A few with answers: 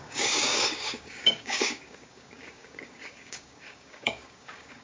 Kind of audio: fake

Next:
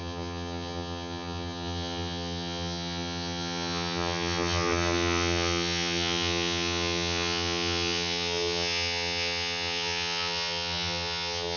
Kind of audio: fake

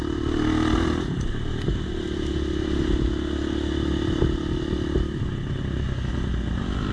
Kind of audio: real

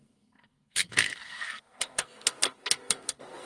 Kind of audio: fake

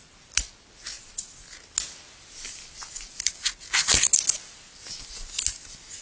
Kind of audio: real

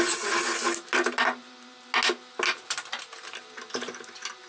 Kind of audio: real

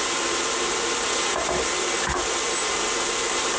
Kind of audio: real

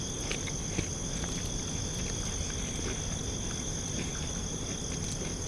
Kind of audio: real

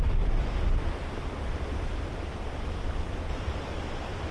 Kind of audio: real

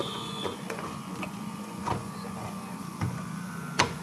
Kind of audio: fake